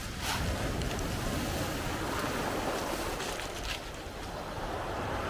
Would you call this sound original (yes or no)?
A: yes